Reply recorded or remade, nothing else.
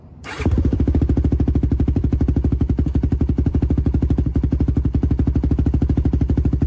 remade